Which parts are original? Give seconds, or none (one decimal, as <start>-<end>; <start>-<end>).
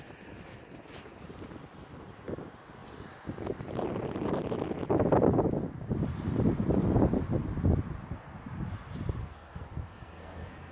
0.0-9.2